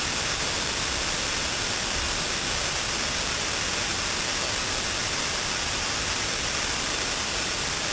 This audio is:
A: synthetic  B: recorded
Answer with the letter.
B